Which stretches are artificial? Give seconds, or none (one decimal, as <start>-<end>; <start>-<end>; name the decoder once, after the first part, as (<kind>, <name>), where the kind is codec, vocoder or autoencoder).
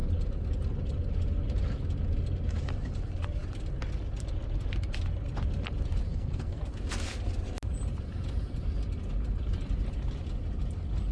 6.1-6.6 (codec, SNAC)